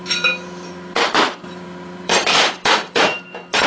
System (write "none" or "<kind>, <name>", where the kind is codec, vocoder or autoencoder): vocoder, BigVGAN v2